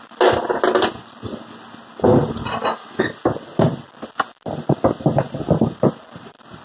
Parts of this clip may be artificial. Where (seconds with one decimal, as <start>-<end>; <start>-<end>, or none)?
none